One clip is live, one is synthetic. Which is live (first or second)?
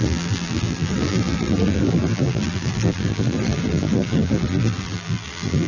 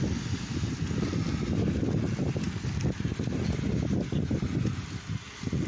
second